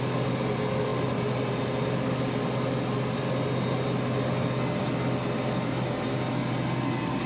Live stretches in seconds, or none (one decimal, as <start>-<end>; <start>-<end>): 0.0-7.3